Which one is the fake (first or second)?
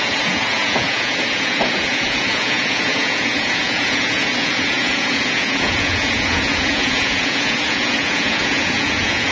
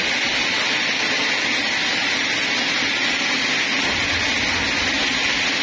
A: first